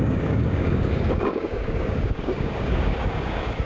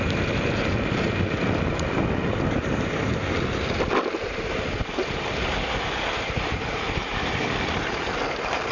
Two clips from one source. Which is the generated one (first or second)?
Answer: first